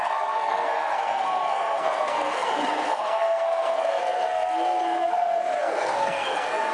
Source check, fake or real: fake